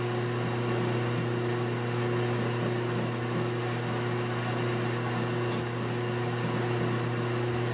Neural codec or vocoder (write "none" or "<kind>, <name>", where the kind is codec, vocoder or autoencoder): none